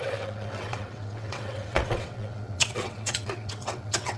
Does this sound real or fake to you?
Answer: fake